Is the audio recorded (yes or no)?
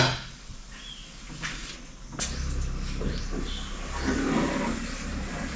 yes